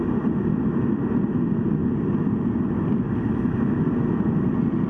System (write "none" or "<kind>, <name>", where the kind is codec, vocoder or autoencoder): none